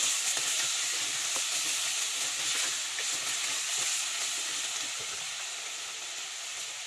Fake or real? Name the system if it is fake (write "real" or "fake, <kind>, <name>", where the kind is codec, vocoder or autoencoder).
real